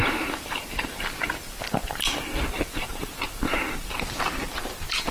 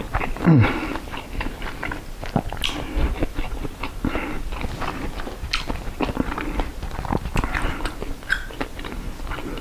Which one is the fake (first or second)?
first